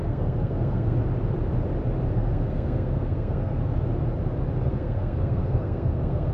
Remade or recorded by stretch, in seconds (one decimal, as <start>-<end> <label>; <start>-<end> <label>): 0.0-1.0 remade; 1.0-2.1 recorded; 2.1-3.6 remade; 3.6-4.7 recorded; 4.7-6.3 remade

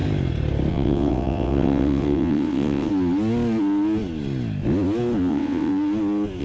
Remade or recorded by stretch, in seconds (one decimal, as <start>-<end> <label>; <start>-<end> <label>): 0.0-0.7 recorded; 0.7-2.9 remade; 2.9-5.3 recorded; 5.3-5.7 remade; 5.7-6.4 recorded

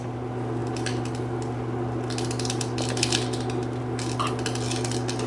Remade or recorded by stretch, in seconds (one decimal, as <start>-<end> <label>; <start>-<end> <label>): 0.0-5.3 recorded

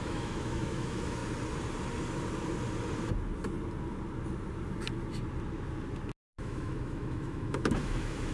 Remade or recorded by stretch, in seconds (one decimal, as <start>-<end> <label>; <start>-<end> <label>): 0.0-1.2 remade; 1.2-6.2 recorded; 6.2-8.3 remade

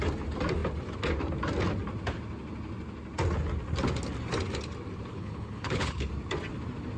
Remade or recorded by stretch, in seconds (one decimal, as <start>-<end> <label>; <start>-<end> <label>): 0.0-5.1 recorded; 5.1-6.1 remade; 6.1-7.0 recorded

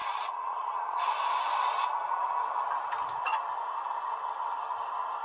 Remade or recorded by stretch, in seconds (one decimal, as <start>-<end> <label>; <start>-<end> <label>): 0.0-1.0 remade; 1.0-5.2 recorded

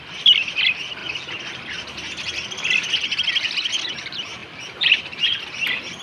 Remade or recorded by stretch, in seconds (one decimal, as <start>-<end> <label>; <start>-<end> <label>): 0.0-1.0 remade; 1.0-3.8 recorded; 3.8-6.0 remade